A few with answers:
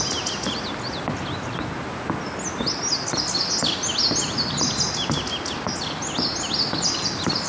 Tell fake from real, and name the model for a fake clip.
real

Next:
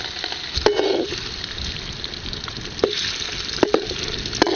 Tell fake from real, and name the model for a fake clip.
real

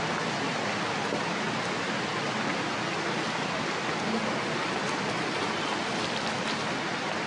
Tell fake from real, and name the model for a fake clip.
real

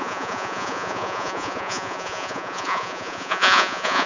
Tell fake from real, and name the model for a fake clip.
fake, vocoder, Vocos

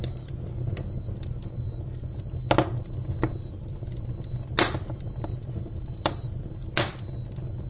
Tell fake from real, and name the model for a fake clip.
real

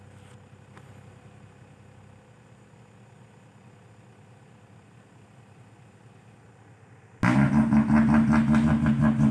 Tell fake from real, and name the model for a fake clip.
real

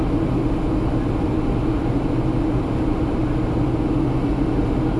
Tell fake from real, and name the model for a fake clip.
real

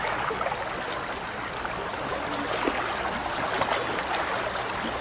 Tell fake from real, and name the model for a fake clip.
real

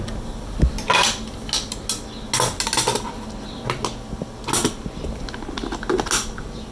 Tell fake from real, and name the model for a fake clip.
real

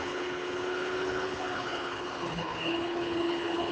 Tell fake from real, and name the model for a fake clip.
fake, codec, HILCodec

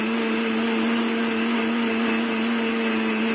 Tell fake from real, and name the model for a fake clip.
real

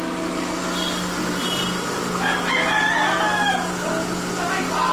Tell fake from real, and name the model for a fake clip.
real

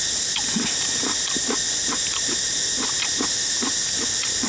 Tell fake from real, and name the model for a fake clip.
real